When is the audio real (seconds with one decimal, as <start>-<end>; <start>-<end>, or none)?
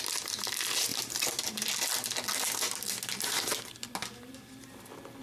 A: 0.0-0.9; 1.7-5.2